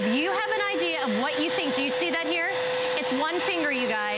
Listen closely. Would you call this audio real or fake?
real